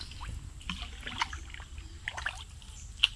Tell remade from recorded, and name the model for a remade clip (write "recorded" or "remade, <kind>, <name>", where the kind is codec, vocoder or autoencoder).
recorded